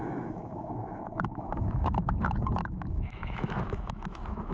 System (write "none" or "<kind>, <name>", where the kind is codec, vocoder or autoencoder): autoencoder, DAC-VAE